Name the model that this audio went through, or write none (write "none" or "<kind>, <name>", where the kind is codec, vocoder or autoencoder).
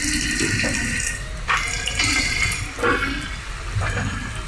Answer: none